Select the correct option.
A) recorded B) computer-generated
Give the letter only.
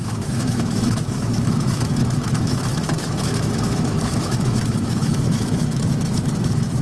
B